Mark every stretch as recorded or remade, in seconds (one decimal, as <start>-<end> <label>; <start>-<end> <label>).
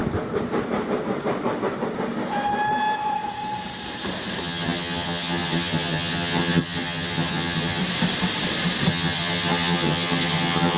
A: 0.0-4.4 recorded; 4.4-7.8 remade; 7.8-8.9 recorded; 8.9-10.8 remade